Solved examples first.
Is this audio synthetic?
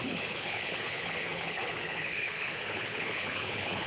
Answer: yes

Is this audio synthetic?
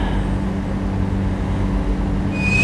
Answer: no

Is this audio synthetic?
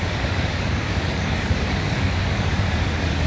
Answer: yes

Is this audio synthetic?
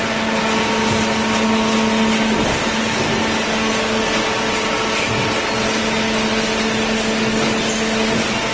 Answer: no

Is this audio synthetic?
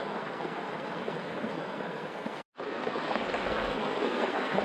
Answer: yes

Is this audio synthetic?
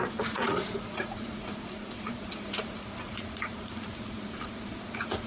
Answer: yes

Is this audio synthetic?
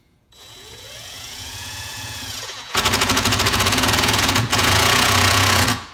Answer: yes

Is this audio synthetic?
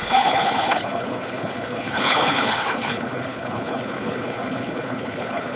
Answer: yes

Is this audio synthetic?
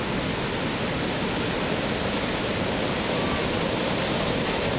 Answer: no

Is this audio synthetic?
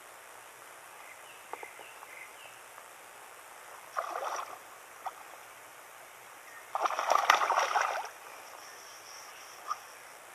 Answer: yes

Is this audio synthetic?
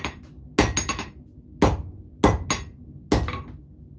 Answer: no